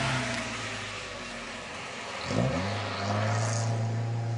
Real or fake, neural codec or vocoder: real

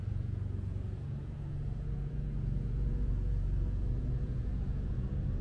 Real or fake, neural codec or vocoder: fake, vocoder, Vocos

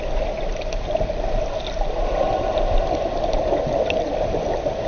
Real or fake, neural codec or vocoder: real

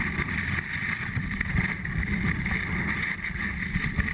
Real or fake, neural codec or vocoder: real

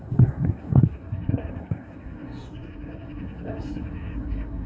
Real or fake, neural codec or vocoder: fake, codec, SNAC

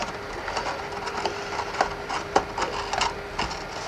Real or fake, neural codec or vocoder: real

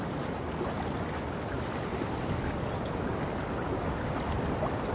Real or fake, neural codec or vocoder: real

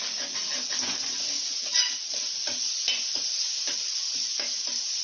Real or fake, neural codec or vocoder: real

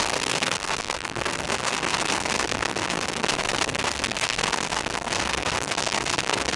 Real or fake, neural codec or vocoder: fake, codec, SNAC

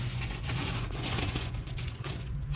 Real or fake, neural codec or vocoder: fake, vocoder, Vocos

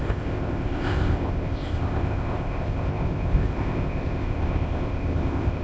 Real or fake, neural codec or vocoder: fake, codec, ZipCodec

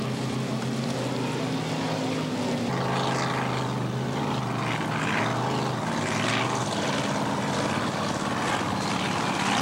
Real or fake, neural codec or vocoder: real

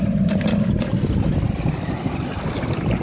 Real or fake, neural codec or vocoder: real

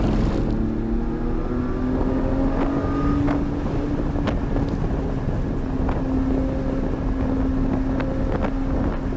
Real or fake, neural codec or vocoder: real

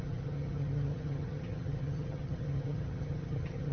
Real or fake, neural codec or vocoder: fake, vocoder, HiFi-GAN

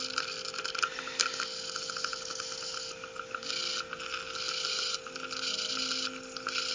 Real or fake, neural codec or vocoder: real